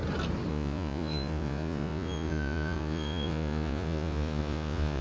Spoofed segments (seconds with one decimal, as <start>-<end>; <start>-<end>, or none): 0.5-5.0